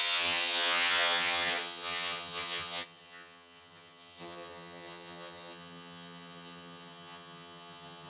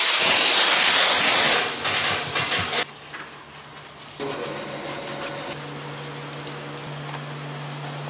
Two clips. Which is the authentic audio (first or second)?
second